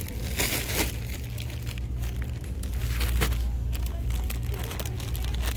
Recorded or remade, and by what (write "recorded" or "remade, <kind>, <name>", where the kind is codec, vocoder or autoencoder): recorded